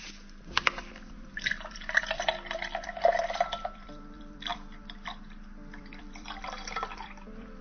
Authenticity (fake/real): fake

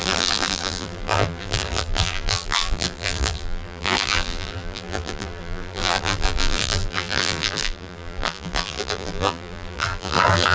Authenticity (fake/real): fake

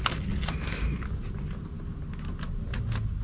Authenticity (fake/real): real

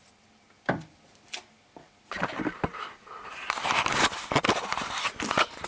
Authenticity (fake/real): real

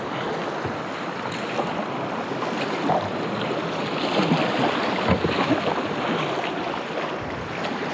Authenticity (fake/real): real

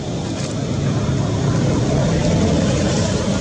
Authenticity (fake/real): real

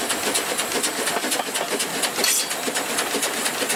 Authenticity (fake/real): real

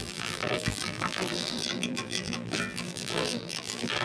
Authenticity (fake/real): fake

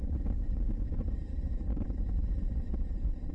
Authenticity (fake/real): fake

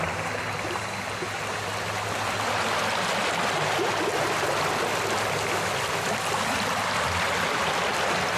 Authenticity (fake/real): fake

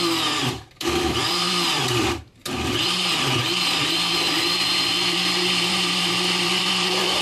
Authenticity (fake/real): fake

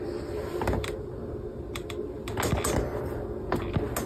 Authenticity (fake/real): real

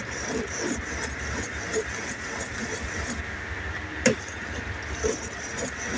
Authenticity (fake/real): fake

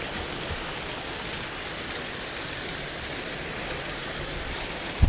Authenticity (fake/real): fake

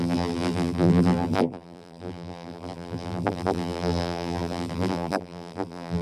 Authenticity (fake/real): fake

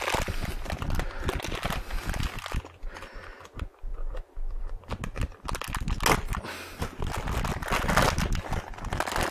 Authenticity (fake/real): real